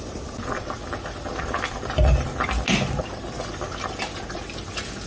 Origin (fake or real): real